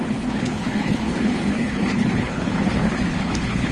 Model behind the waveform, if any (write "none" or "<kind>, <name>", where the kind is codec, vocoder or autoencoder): codec, HILCodec